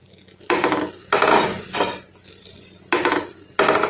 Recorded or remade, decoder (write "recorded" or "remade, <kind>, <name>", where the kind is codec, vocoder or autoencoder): recorded